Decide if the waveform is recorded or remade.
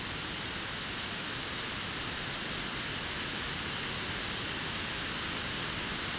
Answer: recorded